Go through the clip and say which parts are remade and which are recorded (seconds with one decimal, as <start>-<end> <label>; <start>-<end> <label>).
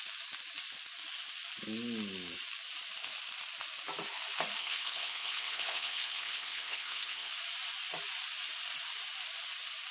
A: 0.0-4.6 recorded; 4.6-7.3 remade; 7.3-9.9 recorded